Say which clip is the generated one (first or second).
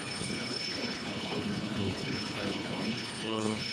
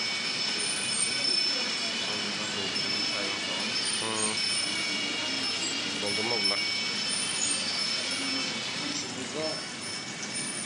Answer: first